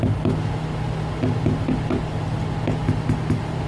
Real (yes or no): yes